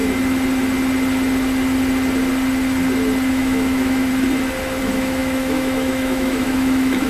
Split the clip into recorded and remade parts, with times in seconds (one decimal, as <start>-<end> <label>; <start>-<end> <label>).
0.0-3.3 recorded; 3.3-4.1 remade; 4.1-4.8 recorded; 4.8-7.1 remade